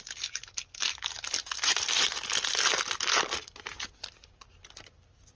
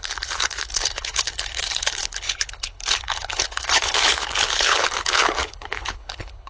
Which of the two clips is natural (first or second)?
first